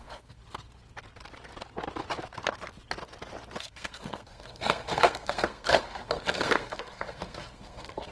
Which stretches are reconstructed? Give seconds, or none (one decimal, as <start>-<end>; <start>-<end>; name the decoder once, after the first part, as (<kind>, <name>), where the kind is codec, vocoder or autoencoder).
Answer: 0.0-0.4 (codec, SNAC); 3.6-8.1